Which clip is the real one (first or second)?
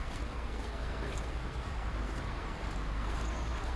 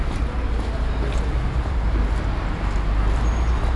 second